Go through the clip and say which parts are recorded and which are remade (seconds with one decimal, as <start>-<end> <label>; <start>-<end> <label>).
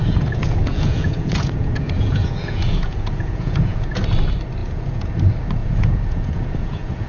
0.0-3.9 remade; 3.9-4.6 recorded; 4.6-5.1 remade; 5.1-5.6 recorded; 5.6-7.1 remade